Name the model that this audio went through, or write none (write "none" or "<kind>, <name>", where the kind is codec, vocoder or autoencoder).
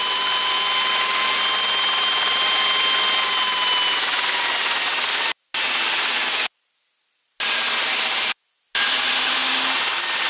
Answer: none